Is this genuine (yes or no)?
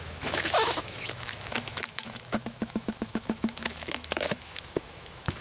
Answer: no